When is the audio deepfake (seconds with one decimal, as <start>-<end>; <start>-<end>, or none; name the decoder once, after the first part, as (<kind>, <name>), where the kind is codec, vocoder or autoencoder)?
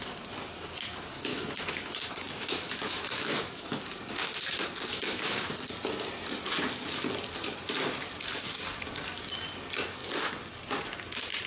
1.3-3.8 (autoencoder, DAC-VAE); 4.9-5.5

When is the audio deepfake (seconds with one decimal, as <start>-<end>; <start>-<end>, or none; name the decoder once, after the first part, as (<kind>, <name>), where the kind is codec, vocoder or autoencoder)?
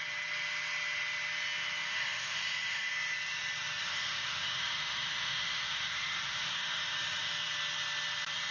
1.9-2.9 (autoencoder, DAC-VAE); 3.8-7.3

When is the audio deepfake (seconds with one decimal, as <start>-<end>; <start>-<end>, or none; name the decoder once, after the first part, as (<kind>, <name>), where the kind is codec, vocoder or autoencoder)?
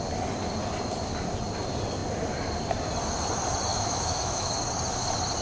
3.7-4.5 (autoencoder, DAC-VAE)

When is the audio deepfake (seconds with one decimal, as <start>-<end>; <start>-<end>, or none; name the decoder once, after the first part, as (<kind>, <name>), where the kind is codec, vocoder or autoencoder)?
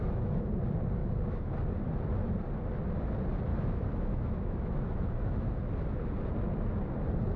0.0-0.5 (autoencoder, DAC-VAE); 1.0-1.5; 3.5-5.5